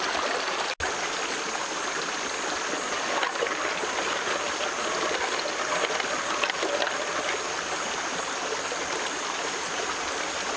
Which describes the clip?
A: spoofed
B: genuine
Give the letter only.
B